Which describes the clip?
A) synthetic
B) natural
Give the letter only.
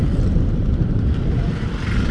B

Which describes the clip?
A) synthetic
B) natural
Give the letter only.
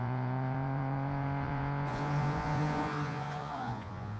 A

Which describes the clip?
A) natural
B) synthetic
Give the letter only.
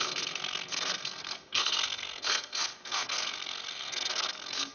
B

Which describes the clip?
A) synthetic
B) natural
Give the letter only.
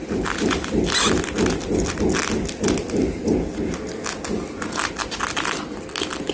B